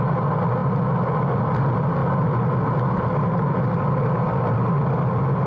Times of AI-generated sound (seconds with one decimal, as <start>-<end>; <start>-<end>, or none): none